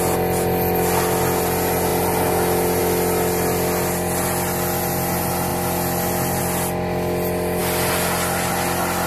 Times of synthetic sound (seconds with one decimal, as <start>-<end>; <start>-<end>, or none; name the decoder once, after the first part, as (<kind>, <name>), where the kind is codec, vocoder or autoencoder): none